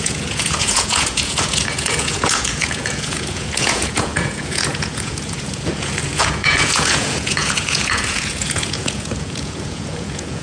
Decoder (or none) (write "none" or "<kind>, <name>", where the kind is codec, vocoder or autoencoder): vocoder, Vocos